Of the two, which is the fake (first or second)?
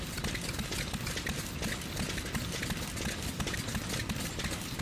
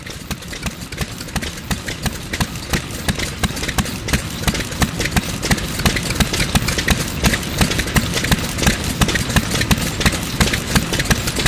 first